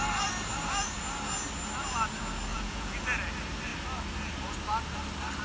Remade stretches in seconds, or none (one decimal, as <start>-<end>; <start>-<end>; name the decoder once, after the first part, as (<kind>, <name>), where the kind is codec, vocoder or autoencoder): 2.5-3.0 (vocoder, Vocos)